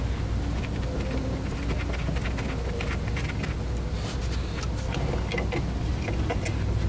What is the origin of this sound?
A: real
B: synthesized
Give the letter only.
A